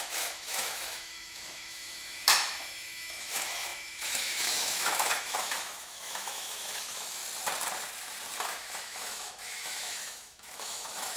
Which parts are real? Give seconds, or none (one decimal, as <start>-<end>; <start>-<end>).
7.2-8.4